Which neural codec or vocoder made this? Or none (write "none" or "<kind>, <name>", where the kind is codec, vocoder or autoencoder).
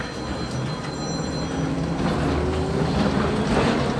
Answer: none